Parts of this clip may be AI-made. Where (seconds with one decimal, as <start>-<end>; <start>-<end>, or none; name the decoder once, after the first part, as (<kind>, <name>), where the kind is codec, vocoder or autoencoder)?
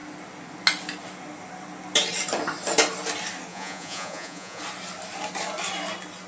3.5-4.6 (vocoder, Vocos)